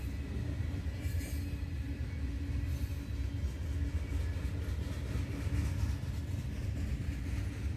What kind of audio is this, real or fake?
real